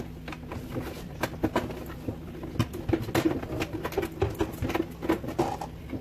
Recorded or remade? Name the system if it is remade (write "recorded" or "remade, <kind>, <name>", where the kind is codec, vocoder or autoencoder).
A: recorded